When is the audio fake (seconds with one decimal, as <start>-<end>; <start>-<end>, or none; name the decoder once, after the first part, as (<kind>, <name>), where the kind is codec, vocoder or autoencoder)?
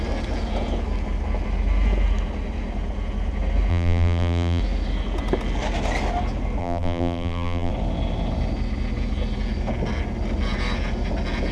3.7-4.6 (vocoder, BigVGAN v2); 6.6-7.7